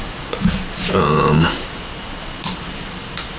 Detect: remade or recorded recorded